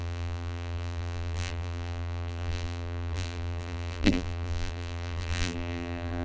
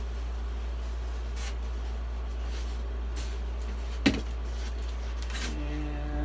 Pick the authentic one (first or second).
second